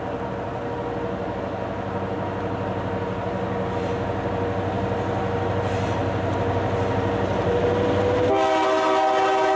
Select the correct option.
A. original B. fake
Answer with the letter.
A